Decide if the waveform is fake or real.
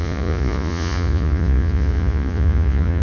fake